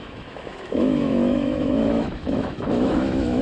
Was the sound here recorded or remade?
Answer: remade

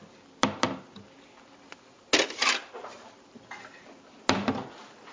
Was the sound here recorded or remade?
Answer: recorded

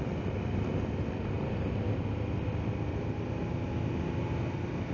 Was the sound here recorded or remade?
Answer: recorded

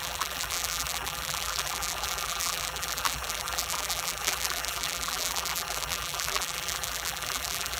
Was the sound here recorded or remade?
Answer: remade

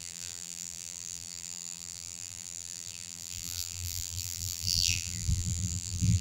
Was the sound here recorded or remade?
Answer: remade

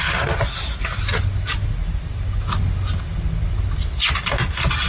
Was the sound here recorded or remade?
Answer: recorded